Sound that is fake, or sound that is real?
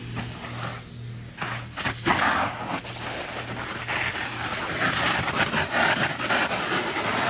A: real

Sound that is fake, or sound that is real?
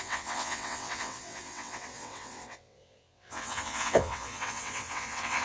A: fake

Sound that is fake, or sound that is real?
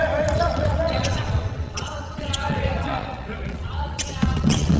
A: fake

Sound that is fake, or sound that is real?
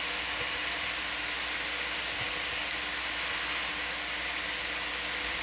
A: real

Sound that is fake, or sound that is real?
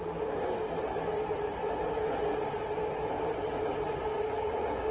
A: real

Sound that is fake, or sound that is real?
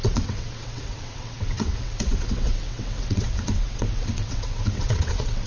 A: fake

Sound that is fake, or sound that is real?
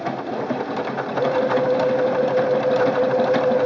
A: real